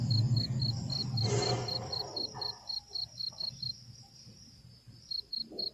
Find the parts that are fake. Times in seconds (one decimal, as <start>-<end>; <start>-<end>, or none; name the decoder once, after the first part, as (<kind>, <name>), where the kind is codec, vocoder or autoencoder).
1.0-4.4 (vocoder, BigVGAN v2)